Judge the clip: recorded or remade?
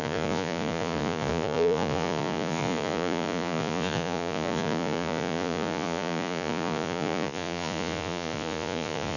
remade